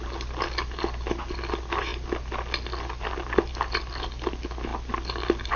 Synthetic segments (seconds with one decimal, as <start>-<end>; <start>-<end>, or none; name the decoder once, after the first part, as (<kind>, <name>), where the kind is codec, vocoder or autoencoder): none